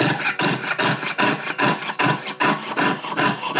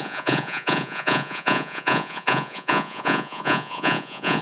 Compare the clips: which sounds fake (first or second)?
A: second